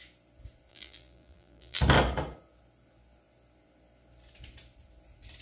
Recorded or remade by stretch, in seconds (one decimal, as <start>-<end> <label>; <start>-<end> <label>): 0.0-0.7 recorded; 0.7-1.8 remade; 1.8-5.4 recorded